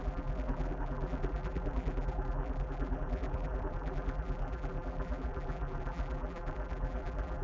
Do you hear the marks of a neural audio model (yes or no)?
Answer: yes